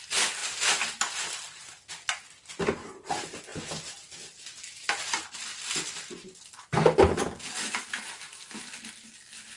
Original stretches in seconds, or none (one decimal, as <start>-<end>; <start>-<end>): 0.0-9.6